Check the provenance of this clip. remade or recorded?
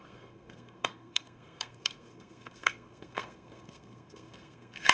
remade